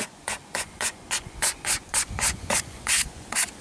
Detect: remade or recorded remade